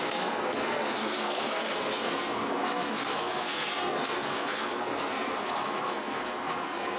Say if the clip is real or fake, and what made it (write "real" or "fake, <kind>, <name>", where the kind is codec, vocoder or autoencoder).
fake, codec, SNAC